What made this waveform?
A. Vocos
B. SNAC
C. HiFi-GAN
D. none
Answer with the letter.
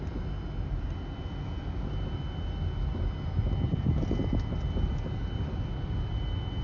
D